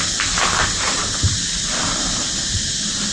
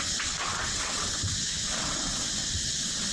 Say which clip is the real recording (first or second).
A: first